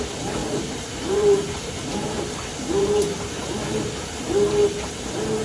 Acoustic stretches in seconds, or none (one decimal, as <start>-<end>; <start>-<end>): 0.0-0.4; 3.4-5.4